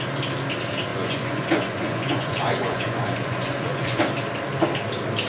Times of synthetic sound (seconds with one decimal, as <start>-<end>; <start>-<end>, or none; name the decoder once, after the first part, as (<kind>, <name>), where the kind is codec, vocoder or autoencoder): 0.9-4.0 (vocoder, Vocos)